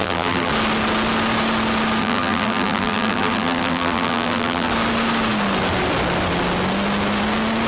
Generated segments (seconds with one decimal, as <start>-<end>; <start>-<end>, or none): 0.0-0.5; 2.0-4.7